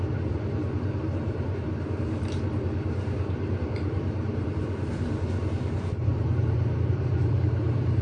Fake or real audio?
fake